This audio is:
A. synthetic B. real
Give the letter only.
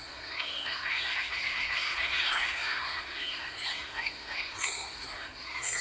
A